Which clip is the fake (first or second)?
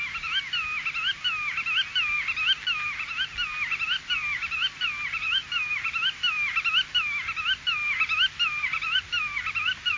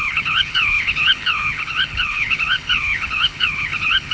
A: second